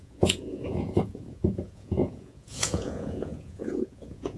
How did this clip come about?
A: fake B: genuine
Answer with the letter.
A